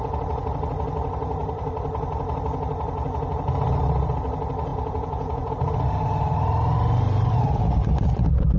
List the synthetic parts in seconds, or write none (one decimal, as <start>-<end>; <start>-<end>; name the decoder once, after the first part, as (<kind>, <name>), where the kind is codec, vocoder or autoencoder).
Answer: 4.7-5.5 (vocoder, Vocos)

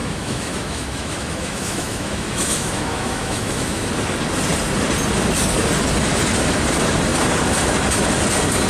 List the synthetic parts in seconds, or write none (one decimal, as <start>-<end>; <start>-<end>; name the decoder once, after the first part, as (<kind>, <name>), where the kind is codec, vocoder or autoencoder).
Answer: 0.0-3.9 (autoencoder, DAC-VAE)

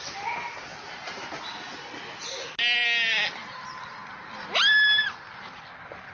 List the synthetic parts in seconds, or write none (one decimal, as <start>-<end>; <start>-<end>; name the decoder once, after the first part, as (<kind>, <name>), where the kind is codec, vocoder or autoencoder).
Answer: none

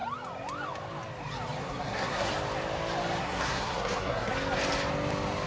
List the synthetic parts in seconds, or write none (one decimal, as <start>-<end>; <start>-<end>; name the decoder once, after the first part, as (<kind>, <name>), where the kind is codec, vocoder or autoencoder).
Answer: 1.6-2.3 (codec, SNAC); 3.2-4.3

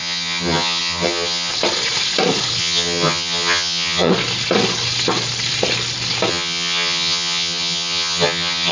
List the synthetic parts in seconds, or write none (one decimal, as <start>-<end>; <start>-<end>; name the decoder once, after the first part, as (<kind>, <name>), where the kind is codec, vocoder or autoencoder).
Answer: 0.0-1.5 (vocoder, HiFi-GAN); 2.6-4.1; 6.3-8.7

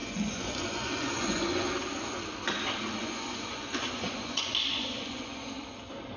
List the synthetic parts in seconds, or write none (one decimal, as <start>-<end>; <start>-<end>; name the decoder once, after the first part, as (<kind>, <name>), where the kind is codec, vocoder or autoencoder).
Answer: 0.0-1.7 (vocoder, Vocos); 3.0-5.5

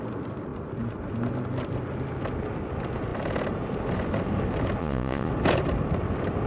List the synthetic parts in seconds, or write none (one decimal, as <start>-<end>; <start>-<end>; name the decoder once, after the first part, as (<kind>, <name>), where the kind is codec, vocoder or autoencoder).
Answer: 4.8-5.3 (vocoder, Vocos)

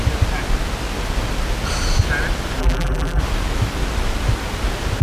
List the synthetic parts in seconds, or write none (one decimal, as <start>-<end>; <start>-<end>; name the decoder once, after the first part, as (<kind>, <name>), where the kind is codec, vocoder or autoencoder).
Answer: 2.6-3.2 (vocoder, BigVGAN v2)